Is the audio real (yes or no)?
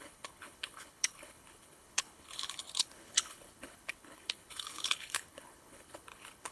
no